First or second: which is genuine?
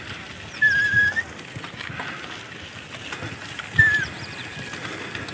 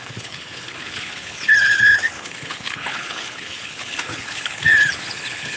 first